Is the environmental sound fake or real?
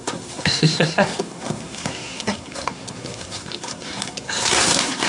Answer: fake